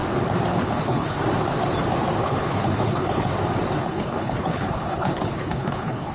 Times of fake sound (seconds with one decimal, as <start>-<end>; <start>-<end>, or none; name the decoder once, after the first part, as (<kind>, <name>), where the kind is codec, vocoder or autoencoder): 0.5-1.2 (codec, HILCodec); 2.2-3.3; 3.9-6.1